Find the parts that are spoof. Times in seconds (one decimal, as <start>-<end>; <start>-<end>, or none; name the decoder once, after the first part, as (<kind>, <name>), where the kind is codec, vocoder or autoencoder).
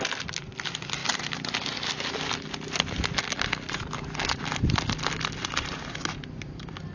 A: none